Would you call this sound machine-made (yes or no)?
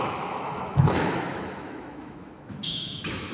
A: yes